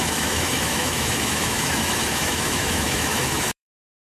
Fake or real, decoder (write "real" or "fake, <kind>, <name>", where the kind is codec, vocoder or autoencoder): fake, autoencoder, DAC-VAE